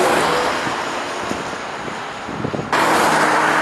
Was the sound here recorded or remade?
recorded